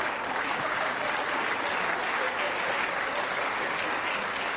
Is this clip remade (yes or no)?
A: no